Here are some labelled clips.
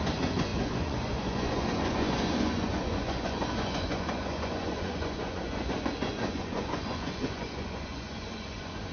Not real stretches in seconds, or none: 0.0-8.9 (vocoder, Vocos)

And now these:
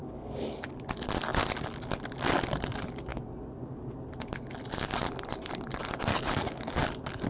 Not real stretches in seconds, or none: 0.0-0.7 (codec, DAC); 6.1-6.8

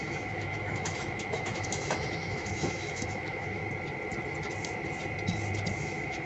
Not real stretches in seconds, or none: 0.0-3.6 (autoencoder, DAC-VAE); 5.8-6.3

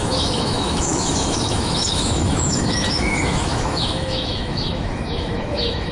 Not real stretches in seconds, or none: 0.0-5.9 (autoencoder, DAC-VAE)

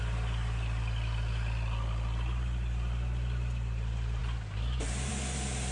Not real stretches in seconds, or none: none